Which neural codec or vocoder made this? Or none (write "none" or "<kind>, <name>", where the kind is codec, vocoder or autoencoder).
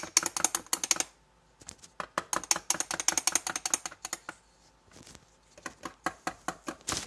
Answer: none